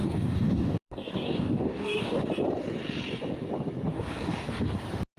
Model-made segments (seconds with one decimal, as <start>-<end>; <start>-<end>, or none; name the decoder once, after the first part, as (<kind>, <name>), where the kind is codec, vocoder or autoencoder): 0.0-2.2 (codec, DAC); 3.9-4.8

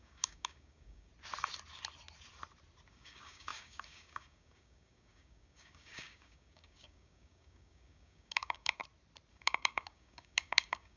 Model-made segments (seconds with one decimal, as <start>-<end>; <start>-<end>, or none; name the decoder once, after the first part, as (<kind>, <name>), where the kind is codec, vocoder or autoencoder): 0.0-1.1 (codec, DAC); 2.9-8.8; 9.3-11.0

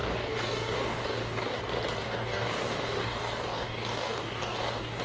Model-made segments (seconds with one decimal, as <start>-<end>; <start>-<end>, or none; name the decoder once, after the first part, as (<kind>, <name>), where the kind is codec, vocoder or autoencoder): 0.0-1.6 (codec, DAC); 2.0-5.0

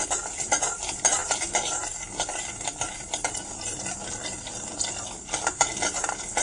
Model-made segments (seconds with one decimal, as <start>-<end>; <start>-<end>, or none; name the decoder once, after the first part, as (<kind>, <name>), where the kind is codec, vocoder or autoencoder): none

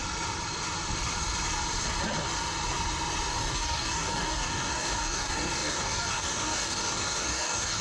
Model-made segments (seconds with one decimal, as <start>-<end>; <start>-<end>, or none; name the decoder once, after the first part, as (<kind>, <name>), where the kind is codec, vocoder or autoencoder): 3.3-7.8 (codec, DAC)

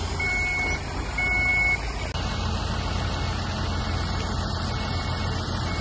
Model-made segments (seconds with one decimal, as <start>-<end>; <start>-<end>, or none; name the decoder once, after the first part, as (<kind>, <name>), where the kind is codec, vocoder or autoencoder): none

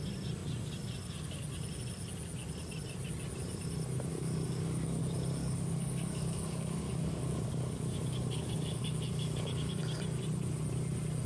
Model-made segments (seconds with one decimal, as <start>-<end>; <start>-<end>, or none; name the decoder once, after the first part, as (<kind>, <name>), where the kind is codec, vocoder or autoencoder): 4.1-5.0 (codec, DAC); 5.4-9.8